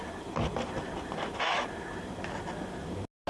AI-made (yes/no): no